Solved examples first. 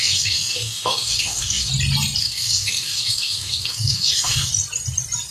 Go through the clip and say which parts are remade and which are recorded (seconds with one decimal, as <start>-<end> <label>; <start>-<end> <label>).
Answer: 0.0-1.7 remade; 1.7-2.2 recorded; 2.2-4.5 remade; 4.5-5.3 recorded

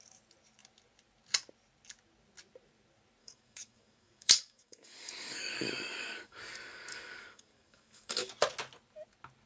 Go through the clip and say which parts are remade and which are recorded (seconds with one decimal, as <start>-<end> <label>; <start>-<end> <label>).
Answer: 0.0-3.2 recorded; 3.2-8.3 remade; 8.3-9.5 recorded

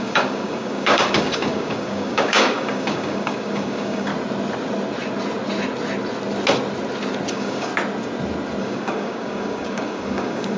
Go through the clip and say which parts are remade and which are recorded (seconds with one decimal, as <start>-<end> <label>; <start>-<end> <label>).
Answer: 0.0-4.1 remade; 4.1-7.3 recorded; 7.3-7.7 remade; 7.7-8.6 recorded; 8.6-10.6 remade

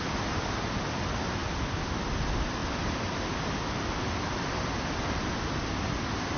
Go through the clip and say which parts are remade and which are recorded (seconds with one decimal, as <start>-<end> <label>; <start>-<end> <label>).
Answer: 0.0-6.4 recorded

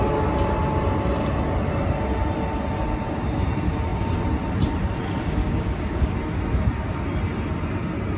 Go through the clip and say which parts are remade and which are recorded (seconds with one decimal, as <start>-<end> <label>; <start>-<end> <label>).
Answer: 0.0-5.4 recorded; 5.4-6.1 remade; 6.1-8.2 recorded

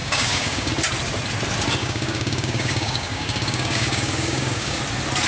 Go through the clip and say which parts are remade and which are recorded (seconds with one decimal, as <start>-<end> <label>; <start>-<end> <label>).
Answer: 0.0-0.7 remade; 0.7-1.8 recorded; 1.8-4.8 remade; 4.8-5.3 recorded

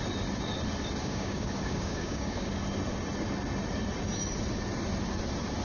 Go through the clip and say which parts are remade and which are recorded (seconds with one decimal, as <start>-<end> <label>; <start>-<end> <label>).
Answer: 0.0-1.0 recorded; 1.0-2.5 remade; 2.5-5.6 recorded

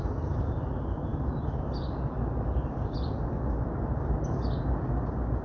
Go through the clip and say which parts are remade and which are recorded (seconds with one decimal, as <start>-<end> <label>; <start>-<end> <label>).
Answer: 0.0-5.4 recorded